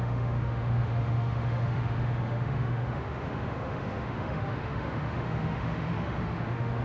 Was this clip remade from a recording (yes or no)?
yes